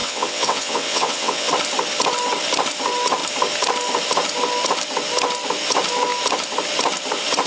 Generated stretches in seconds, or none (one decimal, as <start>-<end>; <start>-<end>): 0.0-1.5